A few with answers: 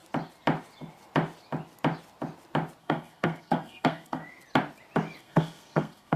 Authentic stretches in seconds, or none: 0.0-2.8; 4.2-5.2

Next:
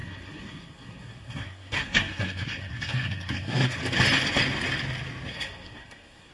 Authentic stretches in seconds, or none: 3.8-5.3

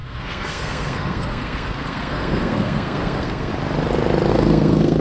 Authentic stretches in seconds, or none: 3.5-4.3

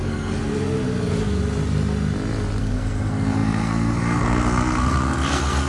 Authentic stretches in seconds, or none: 0.4-2.6

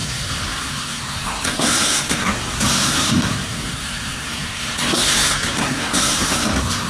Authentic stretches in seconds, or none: none

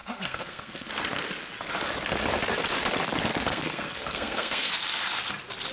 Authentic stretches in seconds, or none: 0.9-3.5; 4.7-5.7

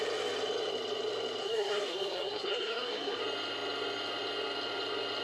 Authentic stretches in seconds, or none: 0.0-1.4; 3.2-5.2

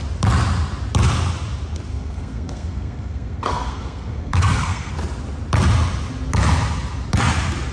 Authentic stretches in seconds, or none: 0.0-1.9; 4.9-7.7